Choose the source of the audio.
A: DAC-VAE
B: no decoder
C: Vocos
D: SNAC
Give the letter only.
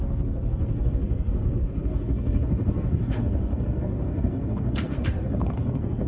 D